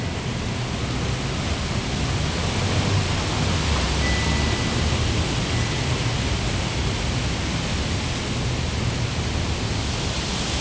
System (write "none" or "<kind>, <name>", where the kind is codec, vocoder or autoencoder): none